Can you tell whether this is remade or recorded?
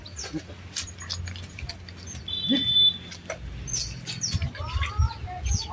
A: recorded